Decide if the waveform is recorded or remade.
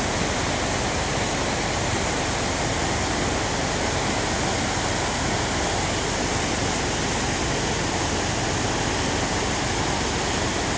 recorded